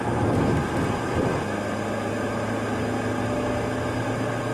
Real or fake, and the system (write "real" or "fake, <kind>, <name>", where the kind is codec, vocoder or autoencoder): real